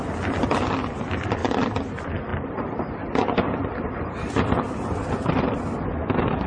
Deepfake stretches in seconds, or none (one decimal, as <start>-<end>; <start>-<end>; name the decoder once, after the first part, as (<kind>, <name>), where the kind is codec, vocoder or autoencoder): 0.0-1.4 (vocoder, BigVGAN v2); 1.9-6.5